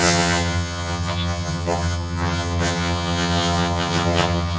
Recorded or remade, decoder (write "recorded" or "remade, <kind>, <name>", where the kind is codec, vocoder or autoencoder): remade, vocoder, HiFi-GAN